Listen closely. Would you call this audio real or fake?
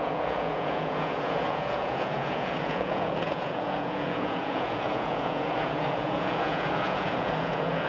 fake